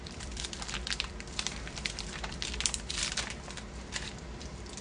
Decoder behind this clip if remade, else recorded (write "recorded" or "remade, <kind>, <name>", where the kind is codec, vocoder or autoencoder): remade, vocoder, BigVGAN v2